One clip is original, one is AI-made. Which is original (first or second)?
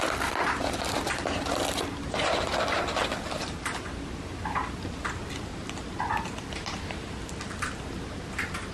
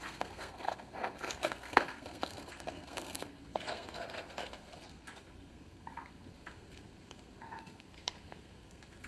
first